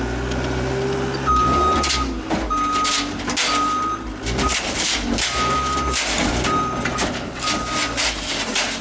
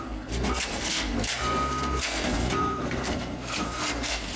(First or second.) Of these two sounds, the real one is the first